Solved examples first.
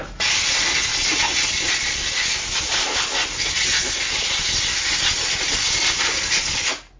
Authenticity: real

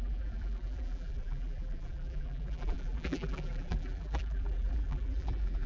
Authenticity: fake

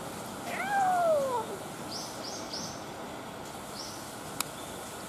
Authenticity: real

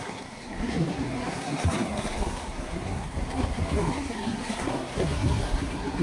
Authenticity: fake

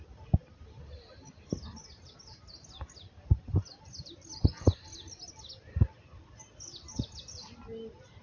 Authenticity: real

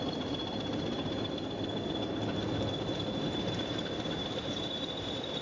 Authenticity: fake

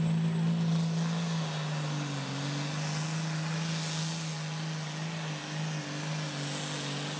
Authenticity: real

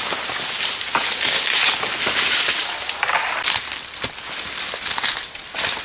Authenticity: real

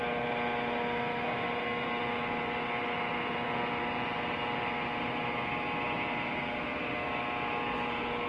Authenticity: real